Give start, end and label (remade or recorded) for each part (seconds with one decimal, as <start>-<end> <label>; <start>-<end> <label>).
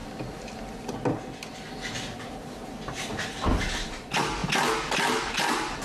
0.0-5.8 recorded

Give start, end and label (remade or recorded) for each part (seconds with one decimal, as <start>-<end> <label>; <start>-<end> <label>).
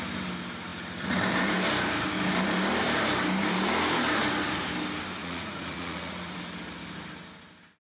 0.0-5.2 recorded; 5.2-6.4 remade; 6.4-8.0 recorded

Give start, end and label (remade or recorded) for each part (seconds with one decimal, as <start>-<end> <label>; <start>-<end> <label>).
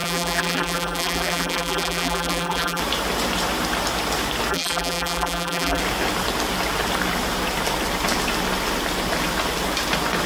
0.0-2.8 remade; 2.8-4.5 recorded; 4.5-5.8 remade; 5.8-10.3 recorded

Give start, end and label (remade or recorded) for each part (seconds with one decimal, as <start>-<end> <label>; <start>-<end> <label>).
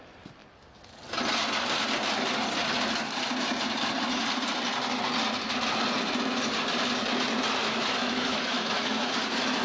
0.0-7.6 recorded; 7.6-9.1 remade; 9.1-9.6 recorded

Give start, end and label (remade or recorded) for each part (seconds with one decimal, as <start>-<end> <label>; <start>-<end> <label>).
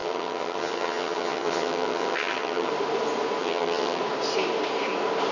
0.0-2.7 remade; 2.7-3.4 recorded; 3.4-4.0 remade; 4.0-5.3 recorded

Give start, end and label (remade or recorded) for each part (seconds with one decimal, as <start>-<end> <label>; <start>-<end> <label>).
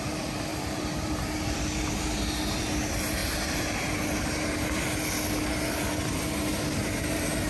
0.0-0.5 recorded; 0.5-1.8 remade; 1.8-3.2 recorded; 3.2-3.9 remade; 3.9-7.5 recorded